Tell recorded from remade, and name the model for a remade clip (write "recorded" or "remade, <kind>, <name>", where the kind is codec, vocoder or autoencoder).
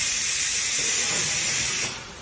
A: remade, vocoder, Vocos